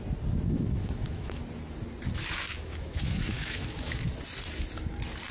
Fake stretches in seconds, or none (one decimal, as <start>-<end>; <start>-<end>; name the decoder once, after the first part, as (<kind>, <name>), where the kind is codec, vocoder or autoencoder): 0.5-1.4 (autoencoder, DAC-VAE); 2.5-4.1